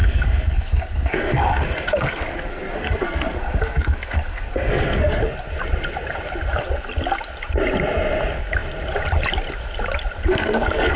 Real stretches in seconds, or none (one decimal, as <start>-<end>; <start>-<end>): 5.2-10.3